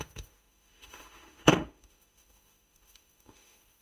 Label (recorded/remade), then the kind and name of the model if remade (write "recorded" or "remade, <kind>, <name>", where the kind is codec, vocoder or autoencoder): remade, autoencoder, DAC-VAE